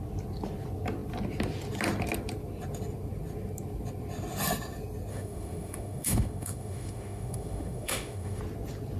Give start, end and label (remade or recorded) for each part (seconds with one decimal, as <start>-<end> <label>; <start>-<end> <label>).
0.0-5.1 recorded; 5.1-8.4 remade; 8.4-9.0 recorded